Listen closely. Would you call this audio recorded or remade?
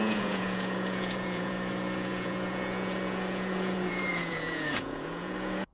remade